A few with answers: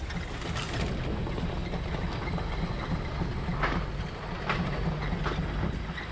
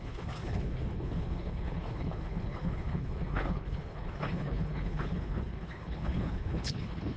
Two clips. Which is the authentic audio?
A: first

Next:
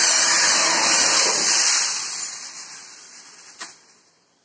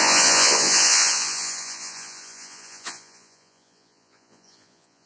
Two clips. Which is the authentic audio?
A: first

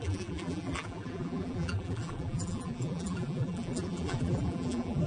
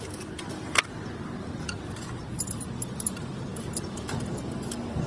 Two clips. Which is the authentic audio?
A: second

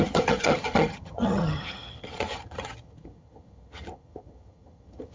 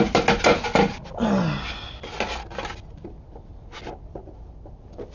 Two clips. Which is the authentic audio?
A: second